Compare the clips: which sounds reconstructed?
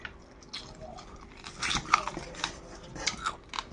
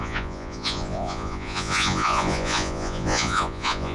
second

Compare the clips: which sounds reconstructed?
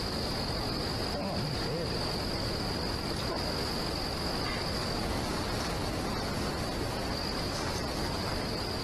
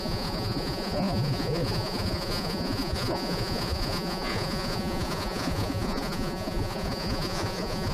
second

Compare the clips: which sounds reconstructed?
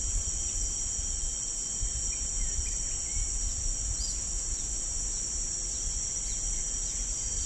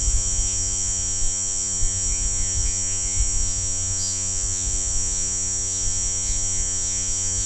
second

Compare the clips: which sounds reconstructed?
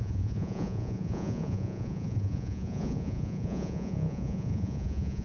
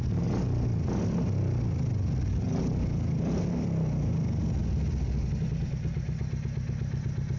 first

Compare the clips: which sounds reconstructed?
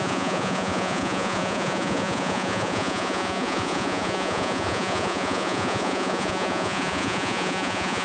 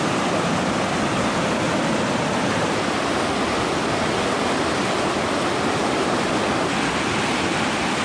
first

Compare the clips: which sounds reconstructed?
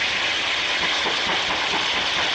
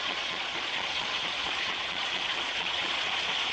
second